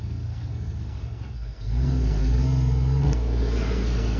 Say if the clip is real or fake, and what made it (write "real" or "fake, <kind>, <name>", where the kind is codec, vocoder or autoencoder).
fake, codec, SNAC